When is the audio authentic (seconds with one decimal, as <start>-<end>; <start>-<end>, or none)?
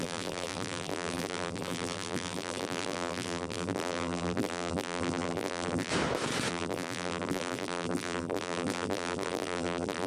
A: 5.9-6.5